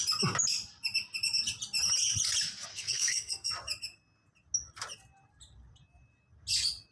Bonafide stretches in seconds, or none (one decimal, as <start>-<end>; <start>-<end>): 0.0-2.7; 3.5-6.9